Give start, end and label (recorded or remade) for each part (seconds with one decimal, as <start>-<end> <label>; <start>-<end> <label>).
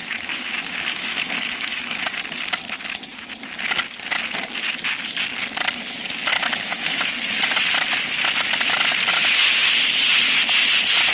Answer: 0.0-2.2 remade; 2.2-6.3 recorded; 6.3-7.1 remade; 7.1-11.1 recorded